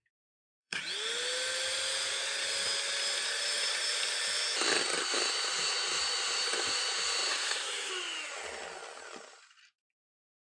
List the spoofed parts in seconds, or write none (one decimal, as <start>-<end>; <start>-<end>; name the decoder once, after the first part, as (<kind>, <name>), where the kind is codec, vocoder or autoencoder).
0.0-0.8 (codec, SNAC); 7.3-7.9